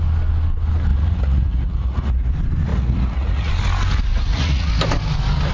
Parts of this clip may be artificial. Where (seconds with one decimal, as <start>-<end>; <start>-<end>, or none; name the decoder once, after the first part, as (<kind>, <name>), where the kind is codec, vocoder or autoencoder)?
0.9-2.3 (vocoder, Vocos); 2.7-3.5; 4.1-4.7